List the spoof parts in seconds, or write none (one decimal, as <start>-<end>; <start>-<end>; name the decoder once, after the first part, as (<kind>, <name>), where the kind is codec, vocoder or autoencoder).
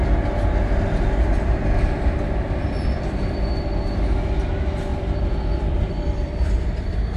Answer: 1.2-3.2 (vocoder, BigVGAN v2); 4.9-7.2